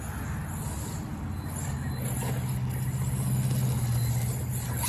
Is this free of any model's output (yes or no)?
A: yes